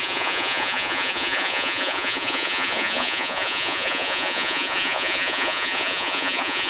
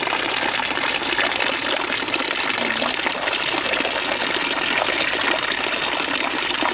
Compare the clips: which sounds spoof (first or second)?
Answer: first